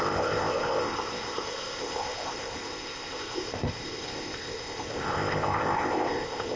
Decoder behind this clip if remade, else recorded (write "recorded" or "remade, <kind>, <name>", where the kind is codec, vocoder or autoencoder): remade, codec, ZipCodec